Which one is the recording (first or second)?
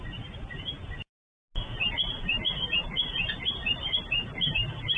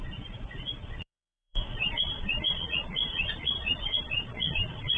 first